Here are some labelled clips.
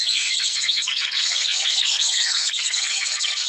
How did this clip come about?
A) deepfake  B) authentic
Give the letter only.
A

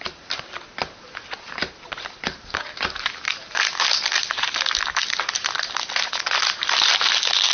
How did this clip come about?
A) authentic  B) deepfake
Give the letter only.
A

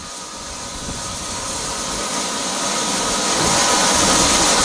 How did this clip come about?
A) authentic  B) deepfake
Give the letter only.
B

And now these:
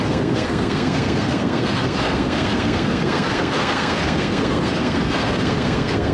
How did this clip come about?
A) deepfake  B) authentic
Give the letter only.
A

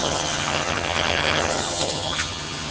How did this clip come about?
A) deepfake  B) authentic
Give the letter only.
A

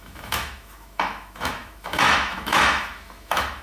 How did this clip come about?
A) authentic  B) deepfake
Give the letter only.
B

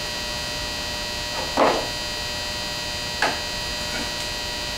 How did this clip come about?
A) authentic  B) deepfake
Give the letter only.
A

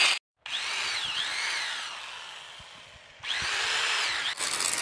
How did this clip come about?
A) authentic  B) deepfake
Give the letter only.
A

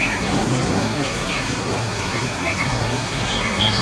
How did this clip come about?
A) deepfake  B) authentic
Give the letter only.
A